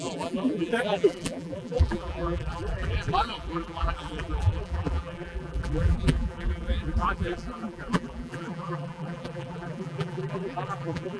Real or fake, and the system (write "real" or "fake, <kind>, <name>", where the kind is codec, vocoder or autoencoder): fake, vocoder, BigVGAN v2